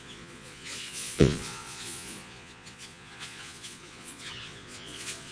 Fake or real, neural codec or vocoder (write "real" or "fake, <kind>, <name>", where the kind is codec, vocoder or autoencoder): fake, vocoder, Vocos